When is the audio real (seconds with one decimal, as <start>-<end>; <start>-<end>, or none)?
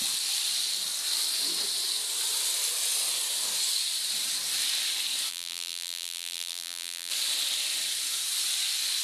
0.0-5.3; 7.1-9.0